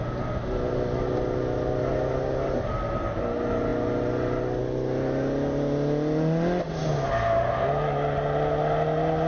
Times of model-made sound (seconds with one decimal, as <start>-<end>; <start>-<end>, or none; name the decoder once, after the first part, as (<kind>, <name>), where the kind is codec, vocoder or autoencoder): none